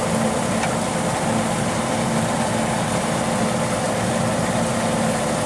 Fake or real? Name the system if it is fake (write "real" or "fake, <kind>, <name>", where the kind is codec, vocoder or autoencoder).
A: real